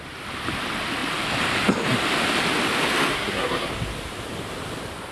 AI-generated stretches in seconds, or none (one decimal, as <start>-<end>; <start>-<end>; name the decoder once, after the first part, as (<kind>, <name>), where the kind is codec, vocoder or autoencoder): 3.1-3.7 (codec, SNAC)